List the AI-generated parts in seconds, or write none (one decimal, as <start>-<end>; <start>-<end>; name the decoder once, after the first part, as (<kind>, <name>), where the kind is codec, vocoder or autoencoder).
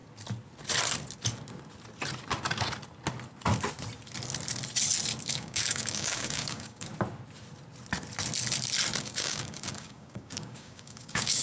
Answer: 5.2-6.9 (codec, DAC); 9.0-11.4